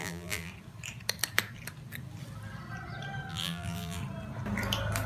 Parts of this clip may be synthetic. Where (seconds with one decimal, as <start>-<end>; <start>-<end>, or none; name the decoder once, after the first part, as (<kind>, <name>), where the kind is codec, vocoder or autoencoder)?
0.0-0.5 (vocoder, BigVGAN v2); 3.3-4.0